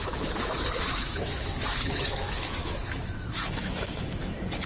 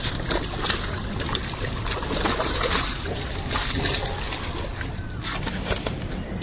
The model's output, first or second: first